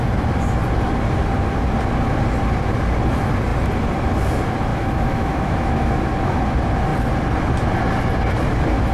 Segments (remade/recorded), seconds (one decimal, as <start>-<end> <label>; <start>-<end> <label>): 0.0-4.7 recorded; 4.7-6.0 remade; 6.0-8.9 recorded